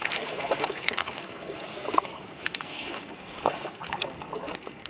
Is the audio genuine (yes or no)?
no